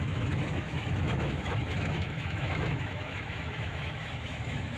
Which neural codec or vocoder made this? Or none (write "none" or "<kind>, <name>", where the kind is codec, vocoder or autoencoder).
autoencoder, DAC-VAE